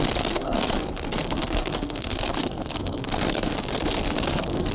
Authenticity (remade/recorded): remade